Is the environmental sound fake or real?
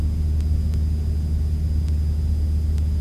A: real